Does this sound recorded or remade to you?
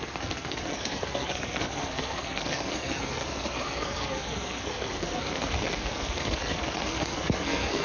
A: remade